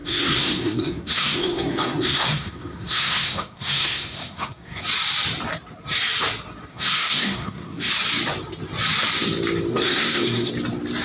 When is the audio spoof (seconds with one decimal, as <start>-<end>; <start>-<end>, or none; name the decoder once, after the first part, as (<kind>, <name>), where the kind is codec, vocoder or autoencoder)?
0.0-4.8 (codec, SNAC); 6.7-7.9; 9.7-10.5